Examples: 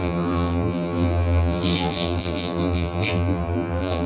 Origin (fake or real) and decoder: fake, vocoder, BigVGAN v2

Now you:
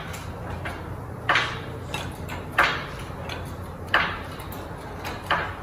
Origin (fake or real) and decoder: real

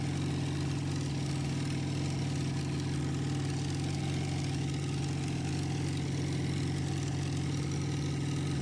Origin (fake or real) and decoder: real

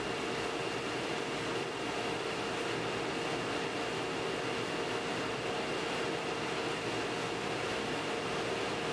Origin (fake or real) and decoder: real